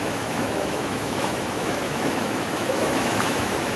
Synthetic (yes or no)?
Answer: yes